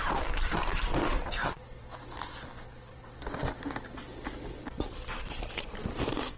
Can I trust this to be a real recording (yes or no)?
yes